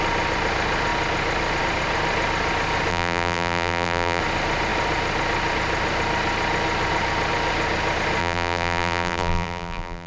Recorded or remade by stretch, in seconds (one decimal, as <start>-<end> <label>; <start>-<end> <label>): 0.0-2.9 recorded; 2.9-4.2 remade; 4.2-8.2 recorded; 8.2-10.1 remade

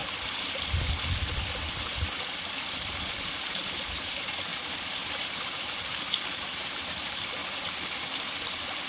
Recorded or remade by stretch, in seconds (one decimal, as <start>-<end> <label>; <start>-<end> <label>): 0.0-3.3 recorded; 3.3-7.4 remade; 7.4-8.9 recorded

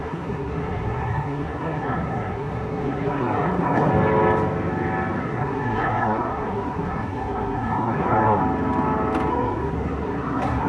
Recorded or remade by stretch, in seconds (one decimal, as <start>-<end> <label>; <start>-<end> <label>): 0.0-3.9 remade; 3.9-5.2 recorded; 5.2-8.4 remade; 8.4-9.3 recorded; 9.3-10.7 remade

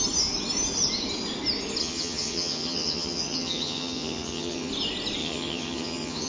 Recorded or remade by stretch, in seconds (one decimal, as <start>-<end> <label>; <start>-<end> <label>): 0.0-1.8 recorded; 1.8-4.7 remade; 4.7-5.2 recorded; 5.2-6.3 remade

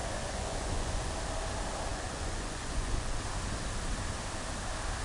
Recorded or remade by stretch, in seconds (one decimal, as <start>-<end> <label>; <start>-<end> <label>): 0.0-1.1 remade; 1.1-1.9 recorded; 1.9-3.2 remade; 3.2-5.0 recorded

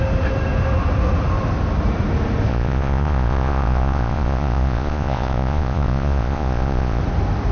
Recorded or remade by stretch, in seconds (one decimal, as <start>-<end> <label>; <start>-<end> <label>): 0.0-2.5 recorded; 2.5-7.0 remade; 7.0-7.5 recorded

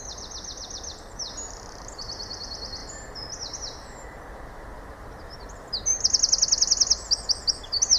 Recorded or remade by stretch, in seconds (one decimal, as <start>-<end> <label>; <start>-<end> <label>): 0.0-8.0 recorded

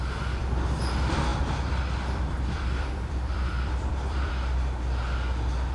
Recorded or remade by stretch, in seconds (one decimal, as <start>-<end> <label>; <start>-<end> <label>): 0.0-0.4 recorded; 0.4-0.9 remade; 0.9-1.3 recorded; 1.3-4.3 remade; 4.3-5.7 recorded